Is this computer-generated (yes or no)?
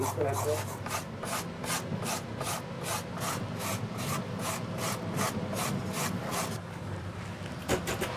no